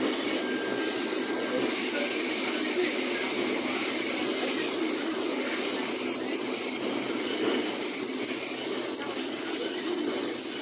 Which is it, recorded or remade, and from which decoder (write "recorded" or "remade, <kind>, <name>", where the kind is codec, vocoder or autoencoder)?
recorded